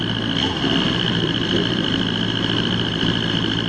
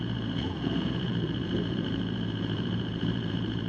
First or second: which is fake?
second